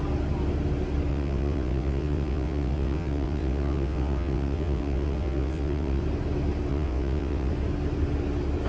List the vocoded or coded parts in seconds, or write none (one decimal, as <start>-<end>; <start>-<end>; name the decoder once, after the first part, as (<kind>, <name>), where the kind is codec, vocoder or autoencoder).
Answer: 1.1-6.0 (vocoder, WaveNeXt); 6.7-7.5